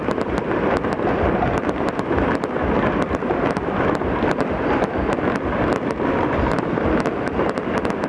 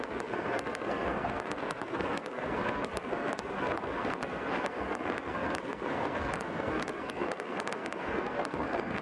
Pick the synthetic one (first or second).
second